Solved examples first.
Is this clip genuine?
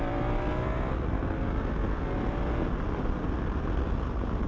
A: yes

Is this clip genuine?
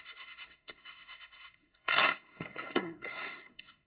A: no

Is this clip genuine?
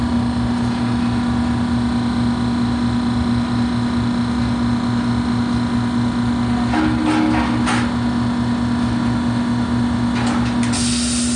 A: yes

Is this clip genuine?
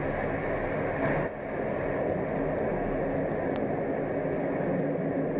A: yes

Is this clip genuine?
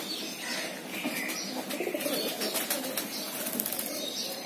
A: yes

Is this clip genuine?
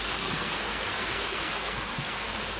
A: no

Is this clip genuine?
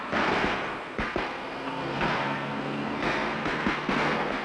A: no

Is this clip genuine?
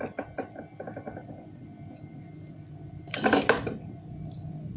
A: yes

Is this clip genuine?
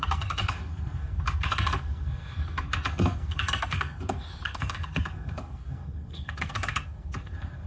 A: no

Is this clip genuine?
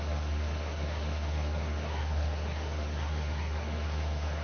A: no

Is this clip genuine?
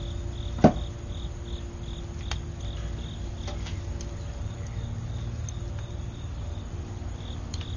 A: yes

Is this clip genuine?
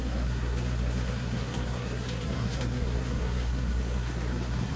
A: no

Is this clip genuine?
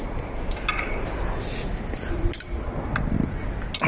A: yes